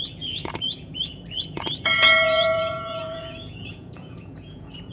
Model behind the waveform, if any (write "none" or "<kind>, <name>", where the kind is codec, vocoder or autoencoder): vocoder, Vocos